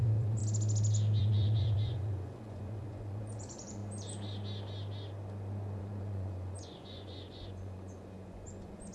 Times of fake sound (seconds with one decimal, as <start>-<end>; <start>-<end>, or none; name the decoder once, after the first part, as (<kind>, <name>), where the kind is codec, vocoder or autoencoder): 0.0-0.4 (vocoder, Vocos); 1.2-3.8; 5.8-8.9